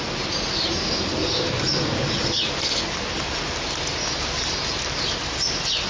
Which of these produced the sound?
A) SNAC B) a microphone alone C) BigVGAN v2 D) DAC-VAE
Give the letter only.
B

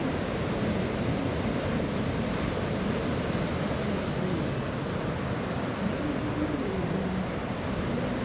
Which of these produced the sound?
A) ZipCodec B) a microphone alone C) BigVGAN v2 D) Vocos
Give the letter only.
B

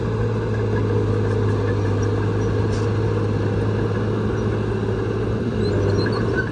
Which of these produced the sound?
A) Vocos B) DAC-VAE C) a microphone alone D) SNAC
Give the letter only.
C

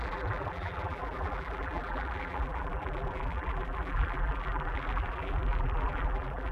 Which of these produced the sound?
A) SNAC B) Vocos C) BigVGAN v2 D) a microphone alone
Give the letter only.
C